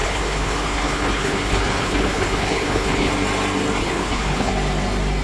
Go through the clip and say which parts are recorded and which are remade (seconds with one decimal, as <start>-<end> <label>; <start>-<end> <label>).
0.0-3.1 remade; 3.1-3.8 recorded; 3.8-4.5 remade; 4.5-5.2 recorded